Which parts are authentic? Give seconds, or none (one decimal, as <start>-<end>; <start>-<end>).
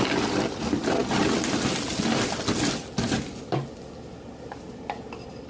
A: 0.0-5.5